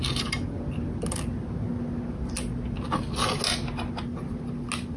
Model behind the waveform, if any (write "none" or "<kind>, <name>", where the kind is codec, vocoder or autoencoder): none